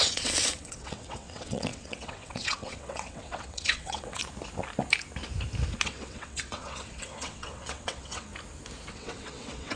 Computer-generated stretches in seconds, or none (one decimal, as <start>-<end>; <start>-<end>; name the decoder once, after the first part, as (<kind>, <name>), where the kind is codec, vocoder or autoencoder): 0.0-4.2 (vocoder, WaveNeXt); 5.8-8.3; 8.9-9.8